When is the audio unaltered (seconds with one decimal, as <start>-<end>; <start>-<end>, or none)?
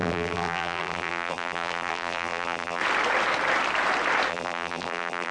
2.8-4.3